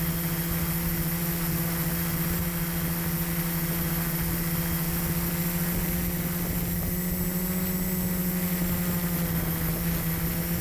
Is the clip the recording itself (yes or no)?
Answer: yes